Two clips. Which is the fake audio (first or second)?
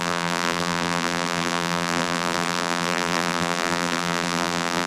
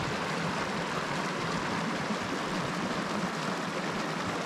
first